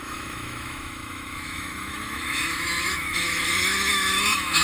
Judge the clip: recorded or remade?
remade